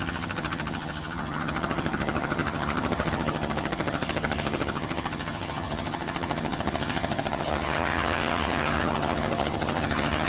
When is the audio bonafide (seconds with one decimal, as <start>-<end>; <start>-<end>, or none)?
none